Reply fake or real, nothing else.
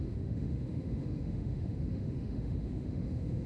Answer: fake